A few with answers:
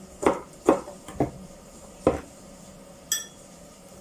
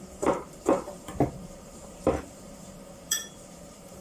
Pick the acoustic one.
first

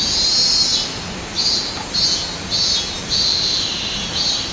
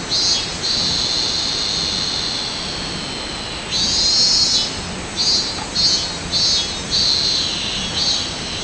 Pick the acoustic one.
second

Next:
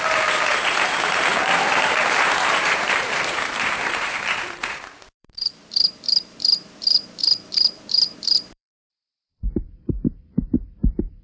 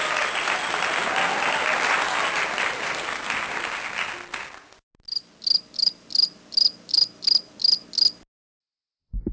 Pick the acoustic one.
second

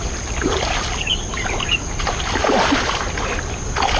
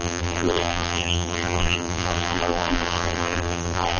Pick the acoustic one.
first